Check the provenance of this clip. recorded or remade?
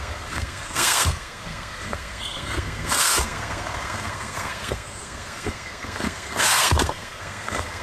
remade